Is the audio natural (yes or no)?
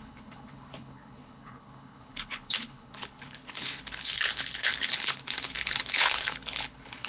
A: no